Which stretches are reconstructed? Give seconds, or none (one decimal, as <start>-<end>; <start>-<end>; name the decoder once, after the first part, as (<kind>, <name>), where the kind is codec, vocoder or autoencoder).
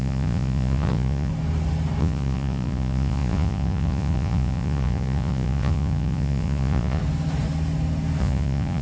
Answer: 0.0-1.3 (vocoder, Vocos); 2.0-7.0; 8.2-8.8